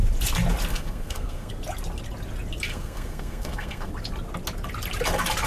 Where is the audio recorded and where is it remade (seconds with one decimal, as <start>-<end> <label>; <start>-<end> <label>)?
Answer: 0.0-0.7 recorded; 0.7-1.5 remade; 1.5-2.7 recorded; 2.7-3.9 remade; 3.9-5.5 recorded